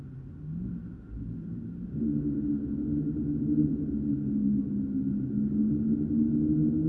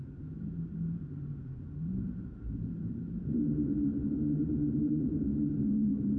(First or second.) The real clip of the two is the first